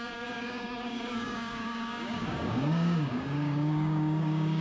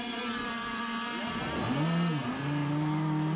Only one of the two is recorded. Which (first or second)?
second